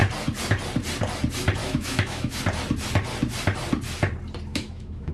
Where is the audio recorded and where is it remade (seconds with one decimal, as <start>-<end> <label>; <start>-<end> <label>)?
0.0-1.6 recorded; 1.6-2.4 remade; 2.4-4.5 recorded; 4.5-5.1 remade